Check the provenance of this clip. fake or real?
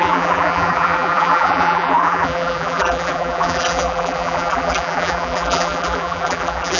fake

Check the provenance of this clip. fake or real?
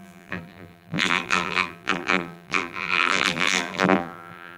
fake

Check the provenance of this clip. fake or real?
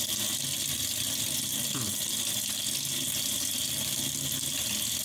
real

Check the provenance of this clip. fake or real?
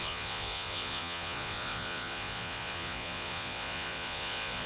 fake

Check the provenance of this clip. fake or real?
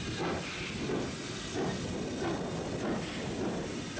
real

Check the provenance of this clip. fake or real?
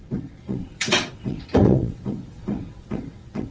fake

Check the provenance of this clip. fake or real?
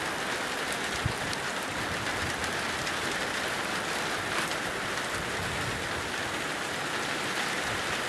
real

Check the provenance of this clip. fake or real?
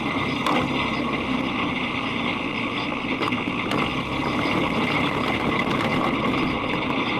real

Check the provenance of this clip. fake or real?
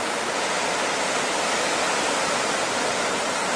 real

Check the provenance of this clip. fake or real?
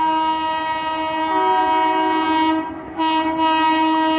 real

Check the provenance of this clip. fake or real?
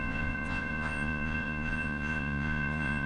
fake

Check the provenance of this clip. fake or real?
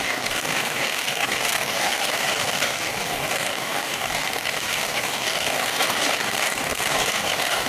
fake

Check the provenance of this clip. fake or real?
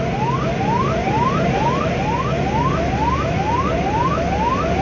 real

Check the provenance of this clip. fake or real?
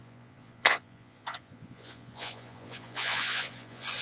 fake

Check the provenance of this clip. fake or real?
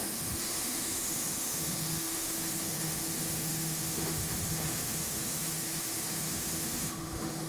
fake